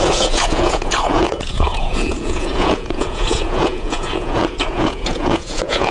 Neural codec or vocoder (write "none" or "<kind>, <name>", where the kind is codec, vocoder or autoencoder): vocoder, Vocos